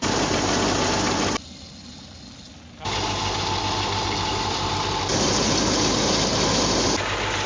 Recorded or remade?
recorded